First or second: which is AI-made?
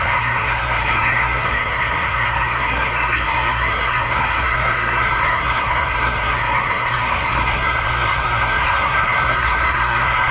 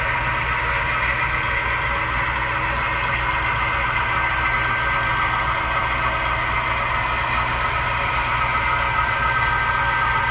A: first